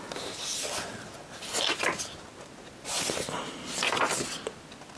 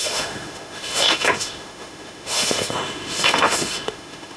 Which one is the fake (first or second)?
second